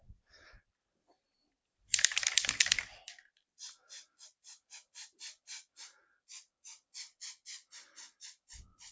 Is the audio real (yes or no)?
no